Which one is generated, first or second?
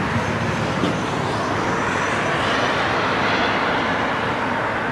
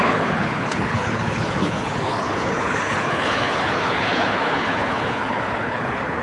second